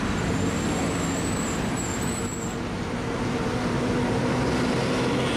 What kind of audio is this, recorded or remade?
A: recorded